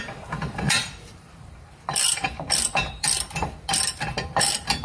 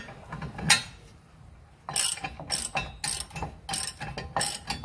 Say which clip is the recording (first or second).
second